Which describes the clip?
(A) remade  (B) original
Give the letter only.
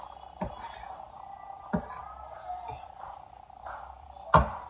B